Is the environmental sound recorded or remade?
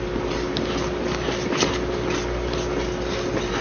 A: recorded